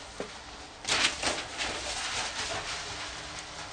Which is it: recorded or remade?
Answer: recorded